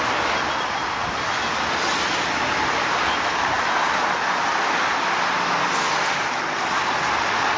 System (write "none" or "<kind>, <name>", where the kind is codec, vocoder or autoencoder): none